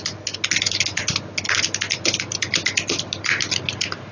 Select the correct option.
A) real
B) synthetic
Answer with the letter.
A